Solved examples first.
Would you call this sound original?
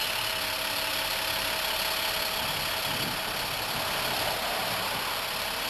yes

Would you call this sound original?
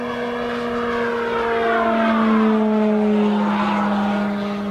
yes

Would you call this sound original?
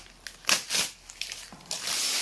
yes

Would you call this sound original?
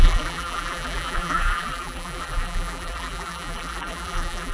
no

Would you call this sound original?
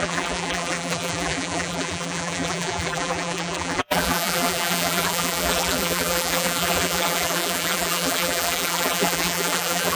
no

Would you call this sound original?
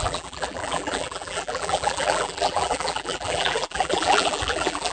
no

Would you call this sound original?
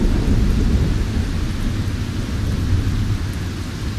yes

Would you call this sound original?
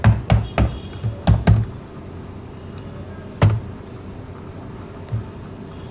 yes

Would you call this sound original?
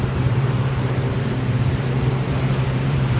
no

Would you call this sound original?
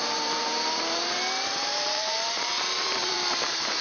no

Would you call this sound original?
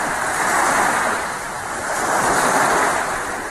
no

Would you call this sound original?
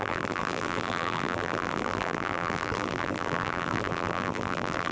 no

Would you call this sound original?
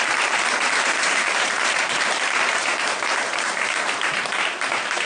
no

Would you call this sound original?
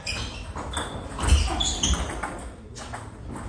yes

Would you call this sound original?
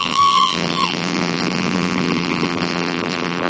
no